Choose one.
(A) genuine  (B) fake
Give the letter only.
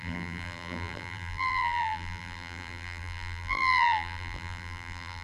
B